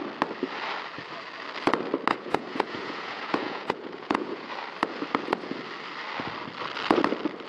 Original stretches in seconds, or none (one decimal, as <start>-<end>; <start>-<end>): 0.0-2.1; 4.5-7.5